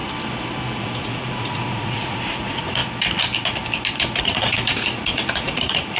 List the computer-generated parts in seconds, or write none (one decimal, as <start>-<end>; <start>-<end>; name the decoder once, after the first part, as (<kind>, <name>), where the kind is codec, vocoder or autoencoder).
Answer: 0.8-2.8 (vocoder, Vocos); 4.2-6.0